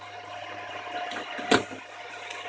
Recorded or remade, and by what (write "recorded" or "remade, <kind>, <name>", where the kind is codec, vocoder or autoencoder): recorded